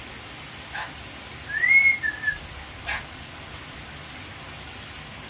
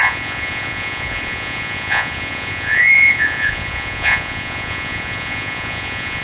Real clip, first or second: first